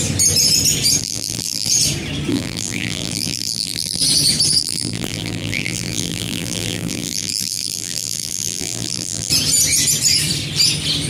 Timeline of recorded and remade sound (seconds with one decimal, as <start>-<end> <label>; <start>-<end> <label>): 0.0-1.0 recorded; 1.0-1.7 remade; 1.7-2.3 recorded; 2.3-4.0 remade; 4.0-4.6 recorded; 4.6-9.3 remade; 9.3-11.1 recorded